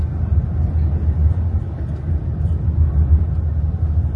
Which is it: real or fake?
real